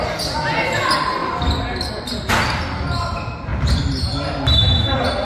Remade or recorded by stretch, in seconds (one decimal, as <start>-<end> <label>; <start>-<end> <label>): 0.0-5.2 recorded